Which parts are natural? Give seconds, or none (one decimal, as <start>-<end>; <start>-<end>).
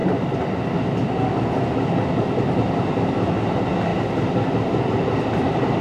0.0-5.8